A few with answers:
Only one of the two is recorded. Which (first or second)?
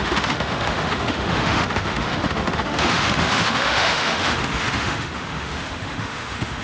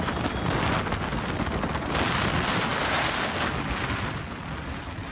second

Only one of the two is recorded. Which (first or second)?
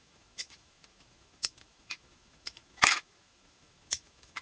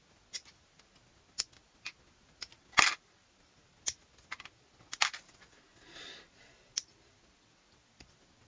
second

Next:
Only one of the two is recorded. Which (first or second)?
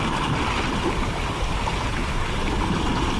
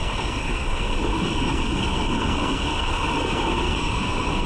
first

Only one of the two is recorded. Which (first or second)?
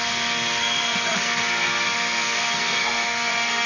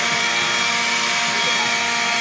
second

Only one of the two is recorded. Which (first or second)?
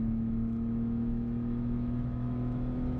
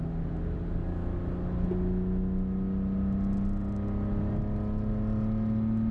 second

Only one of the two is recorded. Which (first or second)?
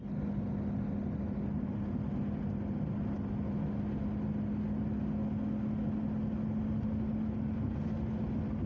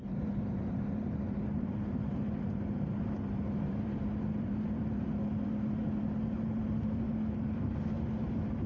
first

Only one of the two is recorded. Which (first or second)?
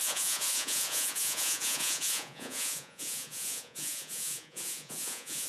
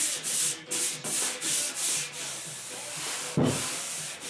second